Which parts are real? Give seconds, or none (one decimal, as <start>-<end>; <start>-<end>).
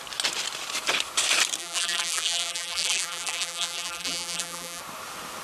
0.0-1.6; 4.8-5.4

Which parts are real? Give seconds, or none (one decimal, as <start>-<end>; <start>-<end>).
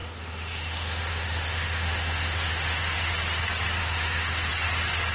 3.1-3.8; 4.5-5.1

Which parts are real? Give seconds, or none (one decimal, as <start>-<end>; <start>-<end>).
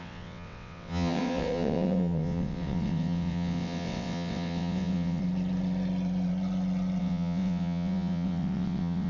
5.2-7.0